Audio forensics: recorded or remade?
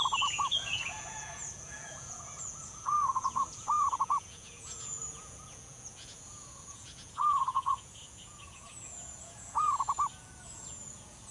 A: remade